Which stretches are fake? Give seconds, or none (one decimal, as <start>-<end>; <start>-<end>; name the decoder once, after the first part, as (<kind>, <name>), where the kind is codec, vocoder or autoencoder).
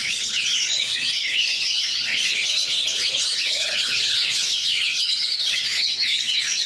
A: 0.0-6.7 (codec, HILCodec)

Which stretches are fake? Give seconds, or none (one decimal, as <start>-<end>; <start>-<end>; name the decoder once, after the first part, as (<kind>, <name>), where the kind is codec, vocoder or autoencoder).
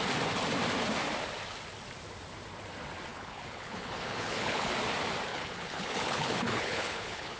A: 3.1-4.7 (codec, HILCodec); 5.3-7.4